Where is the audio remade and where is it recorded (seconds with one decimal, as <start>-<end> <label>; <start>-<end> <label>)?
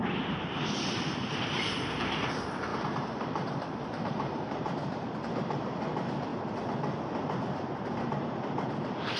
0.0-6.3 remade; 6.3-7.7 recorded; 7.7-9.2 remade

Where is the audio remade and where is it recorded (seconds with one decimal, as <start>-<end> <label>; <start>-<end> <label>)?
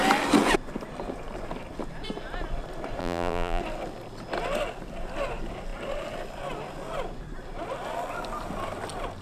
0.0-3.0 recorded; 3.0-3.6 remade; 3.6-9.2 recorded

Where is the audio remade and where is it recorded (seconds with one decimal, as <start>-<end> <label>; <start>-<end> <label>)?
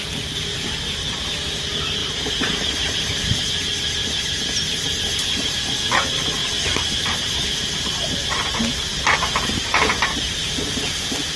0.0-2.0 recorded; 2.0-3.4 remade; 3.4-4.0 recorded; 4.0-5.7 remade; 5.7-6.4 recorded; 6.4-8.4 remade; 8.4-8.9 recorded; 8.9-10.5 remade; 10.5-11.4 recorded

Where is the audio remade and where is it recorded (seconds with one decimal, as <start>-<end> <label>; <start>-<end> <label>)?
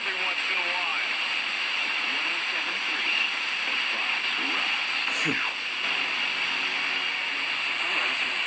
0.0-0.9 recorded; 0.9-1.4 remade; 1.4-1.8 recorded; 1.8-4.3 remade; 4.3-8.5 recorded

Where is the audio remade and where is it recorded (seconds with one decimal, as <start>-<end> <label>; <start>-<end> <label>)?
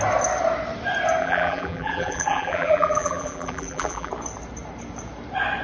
0.0-1.2 recorded; 1.2-4.1 remade; 4.1-5.6 recorded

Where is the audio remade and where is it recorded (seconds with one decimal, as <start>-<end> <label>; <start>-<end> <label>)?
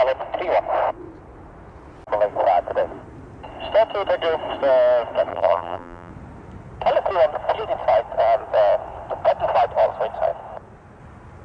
0.0-5.3 recorded; 5.3-6.1 remade; 6.1-11.4 recorded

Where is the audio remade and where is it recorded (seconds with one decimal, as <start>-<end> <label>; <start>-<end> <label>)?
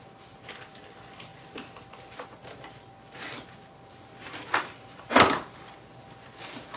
0.0-4.1 recorded; 4.1-5.0 remade; 5.0-6.0 recorded; 6.0-6.8 remade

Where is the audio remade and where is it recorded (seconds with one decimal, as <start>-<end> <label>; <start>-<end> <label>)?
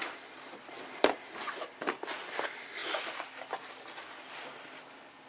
0.0-2.8 remade; 2.8-3.7 recorded; 3.7-5.3 remade